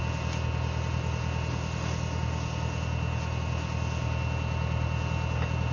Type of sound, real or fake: real